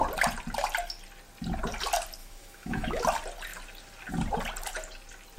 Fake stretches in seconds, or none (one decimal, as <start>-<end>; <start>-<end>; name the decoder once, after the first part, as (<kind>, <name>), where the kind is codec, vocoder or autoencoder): 2.2-3.0 (autoencoder, DAC-VAE)